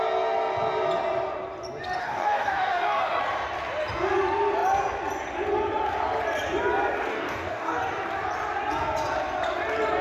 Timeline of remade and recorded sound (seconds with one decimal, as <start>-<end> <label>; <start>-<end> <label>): 0.0-2.0 recorded; 2.0-3.2 remade; 3.2-7.1 recorded; 7.1-7.8 remade; 7.8-10.0 recorded